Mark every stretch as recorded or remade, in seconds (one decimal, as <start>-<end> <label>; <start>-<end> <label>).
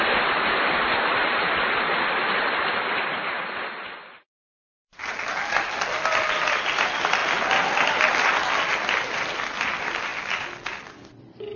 0.0-11.6 recorded